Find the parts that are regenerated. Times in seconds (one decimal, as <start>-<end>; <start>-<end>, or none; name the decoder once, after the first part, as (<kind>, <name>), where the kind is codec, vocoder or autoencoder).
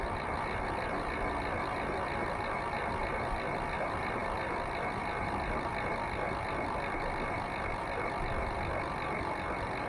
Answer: none